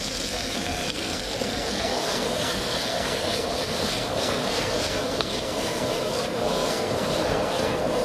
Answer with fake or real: fake